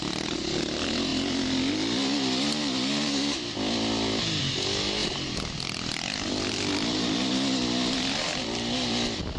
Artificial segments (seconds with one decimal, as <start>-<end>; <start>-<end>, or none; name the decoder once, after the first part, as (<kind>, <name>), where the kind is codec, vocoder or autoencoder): none